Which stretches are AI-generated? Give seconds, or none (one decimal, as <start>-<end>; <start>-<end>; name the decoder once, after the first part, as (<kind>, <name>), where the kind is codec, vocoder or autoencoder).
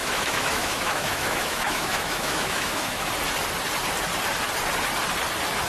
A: 0.0-3.1 (autoencoder, DAC-VAE)